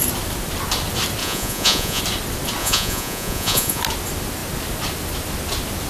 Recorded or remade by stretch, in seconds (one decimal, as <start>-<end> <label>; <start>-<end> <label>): 0.0-1.2 recorded; 1.2-2.0 remade; 2.0-2.6 recorded; 2.6-3.8 remade; 3.8-5.9 recorded